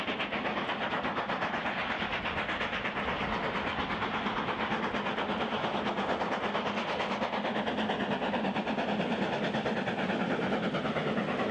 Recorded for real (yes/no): yes